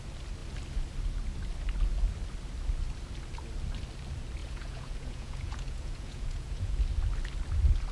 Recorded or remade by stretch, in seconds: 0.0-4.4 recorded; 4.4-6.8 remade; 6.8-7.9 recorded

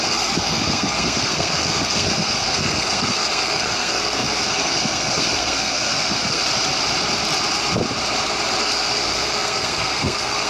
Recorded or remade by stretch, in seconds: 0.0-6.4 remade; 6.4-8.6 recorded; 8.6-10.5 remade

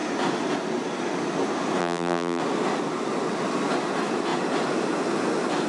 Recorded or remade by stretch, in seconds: 0.0-1.8 recorded; 1.8-2.4 remade; 2.4-5.7 recorded

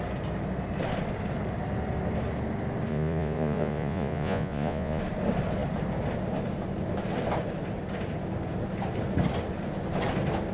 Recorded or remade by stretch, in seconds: 0.0-2.9 recorded; 2.9-5.0 remade; 5.0-10.5 recorded

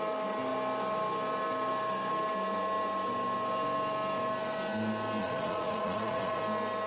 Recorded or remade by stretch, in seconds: 0.0-5.2 recorded; 5.2-6.4 remade; 6.4-6.9 recorded